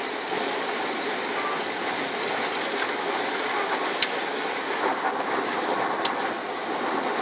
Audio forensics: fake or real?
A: real